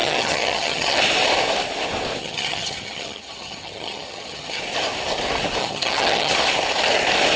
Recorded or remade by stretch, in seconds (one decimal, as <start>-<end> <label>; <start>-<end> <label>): 0.0-1.0 remade; 1.0-2.2 recorded; 2.2-4.6 remade; 4.6-5.6 recorded; 5.6-6.3 remade; 6.3-7.4 recorded